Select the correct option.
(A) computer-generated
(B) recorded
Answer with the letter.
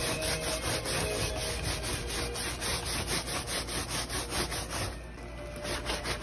B